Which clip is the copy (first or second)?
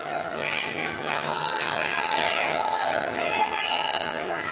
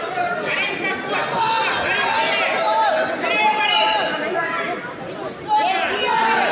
first